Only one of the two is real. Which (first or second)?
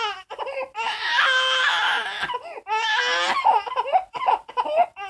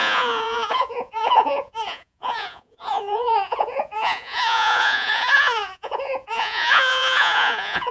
first